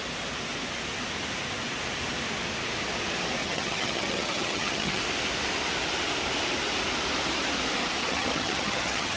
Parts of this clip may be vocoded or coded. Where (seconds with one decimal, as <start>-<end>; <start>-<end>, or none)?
3.4-5.0; 8.0-9.2